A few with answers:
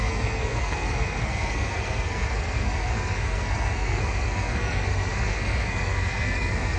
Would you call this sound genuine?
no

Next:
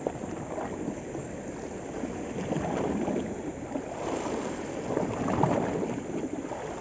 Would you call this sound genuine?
yes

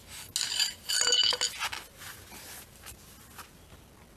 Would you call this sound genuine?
yes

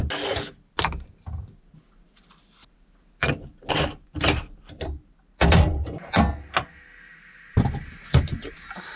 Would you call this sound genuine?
yes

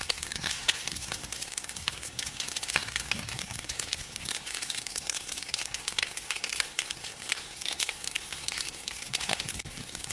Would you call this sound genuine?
no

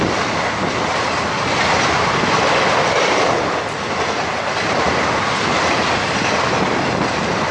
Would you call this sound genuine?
yes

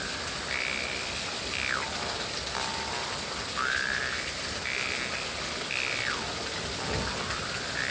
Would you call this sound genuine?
yes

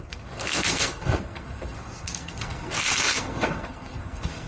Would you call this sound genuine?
no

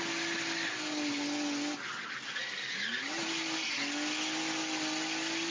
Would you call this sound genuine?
yes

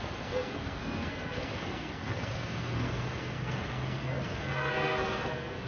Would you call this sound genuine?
no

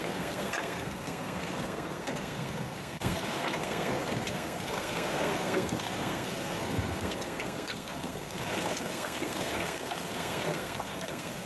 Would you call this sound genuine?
no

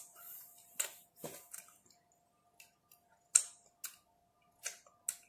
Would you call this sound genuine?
yes